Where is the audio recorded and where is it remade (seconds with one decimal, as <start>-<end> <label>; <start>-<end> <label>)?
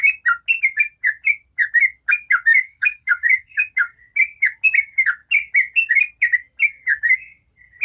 0.0-2.5 recorded; 2.5-3.6 remade; 3.6-7.8 recorded